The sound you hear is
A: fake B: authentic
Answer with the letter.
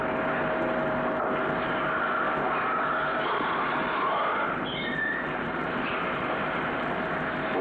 B